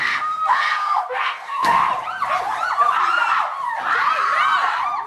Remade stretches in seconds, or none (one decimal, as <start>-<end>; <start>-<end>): 0.0-1.8